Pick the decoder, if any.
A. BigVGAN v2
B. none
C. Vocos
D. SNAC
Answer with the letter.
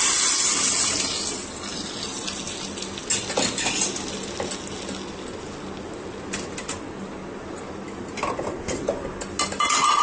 B